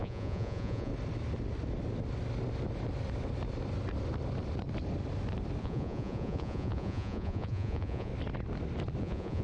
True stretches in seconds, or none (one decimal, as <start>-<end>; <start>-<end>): 0.9-5.6; 8.1-9.0